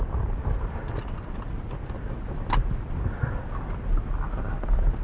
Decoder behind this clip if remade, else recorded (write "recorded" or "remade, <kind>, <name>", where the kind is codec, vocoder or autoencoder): recorded